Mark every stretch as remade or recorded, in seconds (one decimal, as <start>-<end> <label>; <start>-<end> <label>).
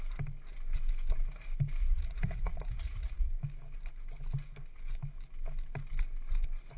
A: 0.0-1.8 recorded; 1.8-3.3 remade; 3.3-6.8 recorded